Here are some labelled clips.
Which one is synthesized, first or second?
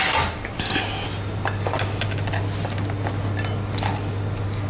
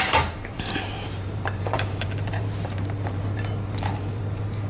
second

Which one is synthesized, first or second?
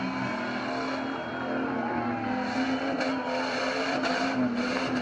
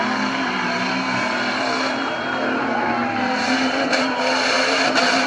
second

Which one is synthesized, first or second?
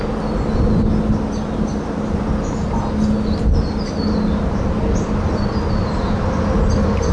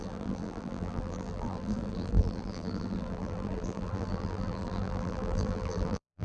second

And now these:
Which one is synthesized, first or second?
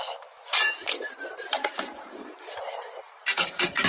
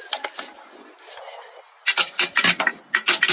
first